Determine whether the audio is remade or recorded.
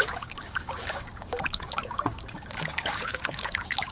remade